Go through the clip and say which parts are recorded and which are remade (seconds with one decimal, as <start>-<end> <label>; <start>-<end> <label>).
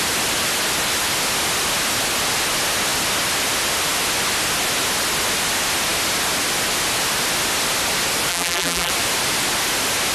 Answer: 0.0-8.3 recorded; 8.3-8.9 remade; 8.9-10.1 recorded